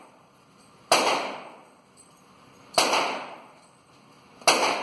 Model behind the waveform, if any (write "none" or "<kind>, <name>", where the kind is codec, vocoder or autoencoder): none